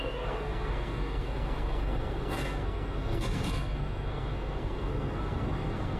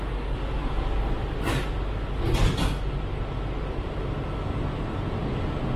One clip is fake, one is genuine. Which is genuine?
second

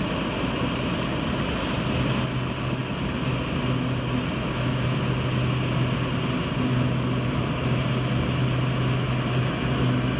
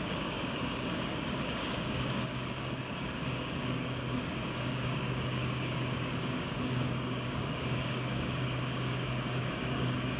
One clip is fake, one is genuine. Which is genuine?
first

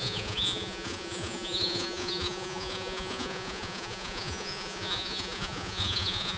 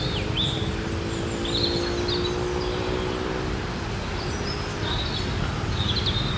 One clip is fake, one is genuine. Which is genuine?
second